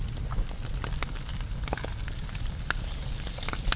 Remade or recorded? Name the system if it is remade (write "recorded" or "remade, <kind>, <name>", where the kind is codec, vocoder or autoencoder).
recorded